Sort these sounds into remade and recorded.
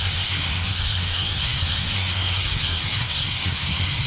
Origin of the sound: remade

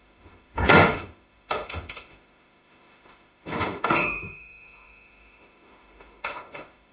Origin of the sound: remade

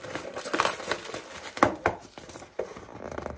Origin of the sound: recorded